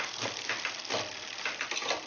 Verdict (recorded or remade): remade